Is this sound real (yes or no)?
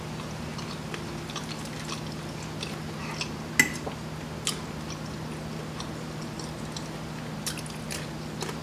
yes